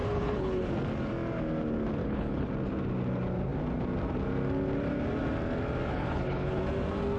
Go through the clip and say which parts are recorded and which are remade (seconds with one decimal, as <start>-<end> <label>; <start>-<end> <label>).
0.0-0.7 remade; 0.7-2.0 recorded; 2.0-2.5 remade; 2.5-5.9 recorded; 5.9-6.6 remade; 6.6-7.2 recorded